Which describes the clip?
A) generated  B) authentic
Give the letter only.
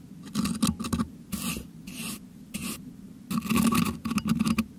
B